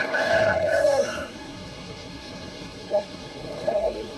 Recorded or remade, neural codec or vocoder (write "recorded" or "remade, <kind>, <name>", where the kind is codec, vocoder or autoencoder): remade, codec, SNAC